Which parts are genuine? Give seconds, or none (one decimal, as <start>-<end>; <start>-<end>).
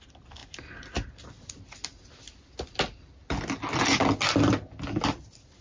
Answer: 0.0-5.6